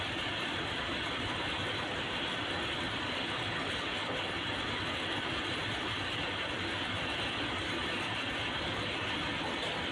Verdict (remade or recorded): recorded